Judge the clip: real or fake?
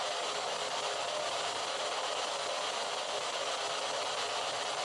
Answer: real